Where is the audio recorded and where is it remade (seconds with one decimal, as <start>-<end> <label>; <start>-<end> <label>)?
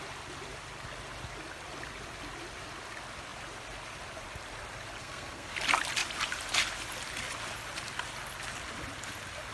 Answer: 0.0-5.0 recorded; 5.0-5.5 remade; 5.5-9.5 recorded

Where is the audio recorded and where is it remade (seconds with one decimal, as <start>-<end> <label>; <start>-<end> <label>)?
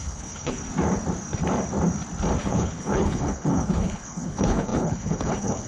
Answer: 0.0-0.6 remade; 0.6-2.4 recorded; 2.4-5.7 remade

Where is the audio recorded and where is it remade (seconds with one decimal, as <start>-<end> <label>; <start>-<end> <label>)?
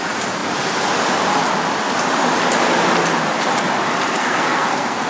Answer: 0.0-4.2 recorded; 4.2-5.1 remade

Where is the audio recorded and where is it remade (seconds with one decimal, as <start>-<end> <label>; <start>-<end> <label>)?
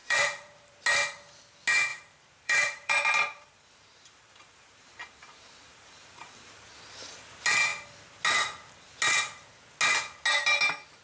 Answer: 0.0-0.8 remade; 0.8-1.9 recorded; 1.9-6.8 remade; 6.8-11.0 recorded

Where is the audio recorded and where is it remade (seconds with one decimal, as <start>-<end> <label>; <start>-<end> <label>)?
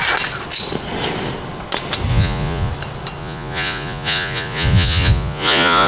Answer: 0.0-2.1 recorded; 2.1-2.7 remade; 2.7-3.2 recorded; 3.2-5.9 remade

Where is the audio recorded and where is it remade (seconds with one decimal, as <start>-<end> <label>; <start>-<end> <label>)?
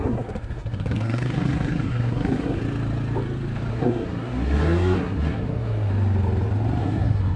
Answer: 0.0-2.6 remade; 2.6-3.7 recorded; 3.7-5.9 remade; 5.9-6.8 recorded; 6.8-7.4 remade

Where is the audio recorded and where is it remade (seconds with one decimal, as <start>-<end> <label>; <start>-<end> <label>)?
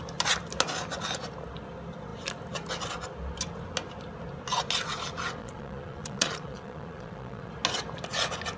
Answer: 0.0-5.4 recorded; 5.4-7.5 remade; 7.5-8.6 recorded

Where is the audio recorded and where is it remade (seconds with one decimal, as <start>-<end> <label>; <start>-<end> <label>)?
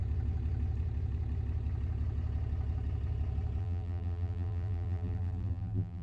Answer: 0.0-3.6 recorded; 3.6-6.0 remade